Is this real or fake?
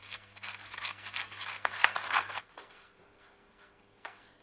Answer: fake